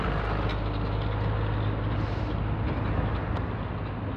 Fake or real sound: real